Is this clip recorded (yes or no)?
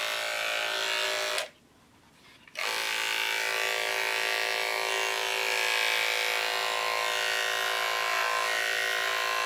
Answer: yes